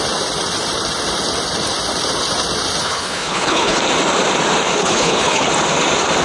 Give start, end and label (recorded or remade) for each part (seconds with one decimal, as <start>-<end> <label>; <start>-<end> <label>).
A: 0.0-2.8 recorded; 2.8-3.8 remade; 3.8-4.8 recorded; 4.8-5.5 remade; 5.5-6.2 recorded